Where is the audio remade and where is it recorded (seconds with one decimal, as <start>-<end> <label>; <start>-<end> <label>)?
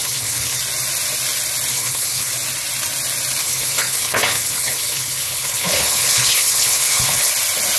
0.0-0.6 remade; 0.6-1.7 recorded; 1.7-2.3 remade; 2.3-3.4 recorded; 3.4-7.3 remade; 7.3-7.8 recorded